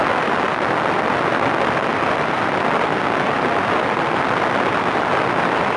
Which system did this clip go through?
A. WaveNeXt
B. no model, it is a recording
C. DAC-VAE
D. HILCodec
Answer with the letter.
B